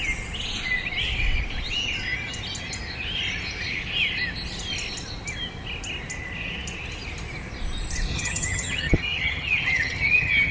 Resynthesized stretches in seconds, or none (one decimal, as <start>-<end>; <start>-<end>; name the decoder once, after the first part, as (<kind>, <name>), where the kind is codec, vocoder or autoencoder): 8.1-10.5 (vocoder, HiFi-GAN)